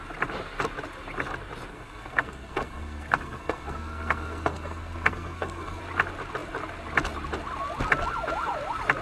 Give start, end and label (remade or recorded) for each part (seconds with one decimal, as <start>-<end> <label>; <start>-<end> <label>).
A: 0.0-1.7 recorded; 1.7-5.8 remade; 5.8-9.0 recorded